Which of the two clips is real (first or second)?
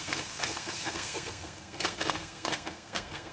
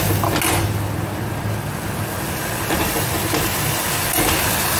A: second